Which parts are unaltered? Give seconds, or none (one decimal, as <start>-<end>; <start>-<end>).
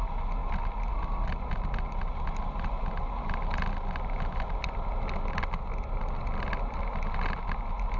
0.0-8.0